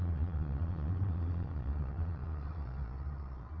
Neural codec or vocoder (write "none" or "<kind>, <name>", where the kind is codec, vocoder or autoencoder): vocoder, Vocos